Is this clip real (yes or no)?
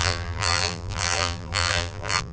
no